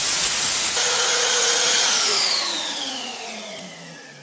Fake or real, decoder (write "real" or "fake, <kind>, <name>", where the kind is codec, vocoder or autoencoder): fake, vocoder, Vocos